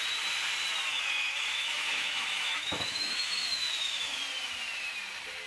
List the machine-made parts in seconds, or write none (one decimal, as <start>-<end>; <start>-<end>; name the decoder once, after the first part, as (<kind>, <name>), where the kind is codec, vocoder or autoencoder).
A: 0.9-4.2 (autoencoder, DAC-VAE)